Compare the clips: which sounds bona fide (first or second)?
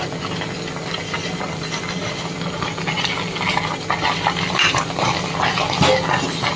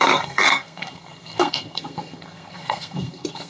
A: first